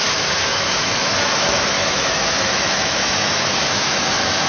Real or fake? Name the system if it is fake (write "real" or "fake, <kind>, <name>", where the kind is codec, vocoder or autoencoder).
fake, autoencoder, DAC-VAE